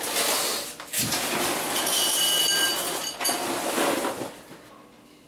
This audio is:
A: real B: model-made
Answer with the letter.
A